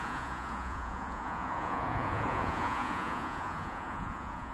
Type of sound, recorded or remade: remade